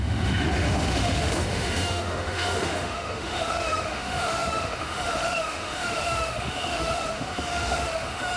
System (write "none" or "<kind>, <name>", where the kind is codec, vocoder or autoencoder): autoencoder, DAC-VAE